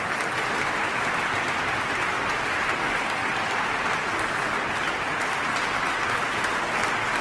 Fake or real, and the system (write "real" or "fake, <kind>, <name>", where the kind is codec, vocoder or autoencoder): real